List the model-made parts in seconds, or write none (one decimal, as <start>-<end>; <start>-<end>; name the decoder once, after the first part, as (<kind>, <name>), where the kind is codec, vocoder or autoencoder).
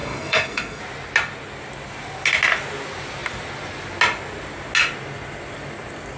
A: 0.0-0.8 (codec, SNAC)